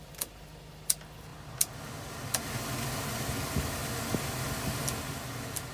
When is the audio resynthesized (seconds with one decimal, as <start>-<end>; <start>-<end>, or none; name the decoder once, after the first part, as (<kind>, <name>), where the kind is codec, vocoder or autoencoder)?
none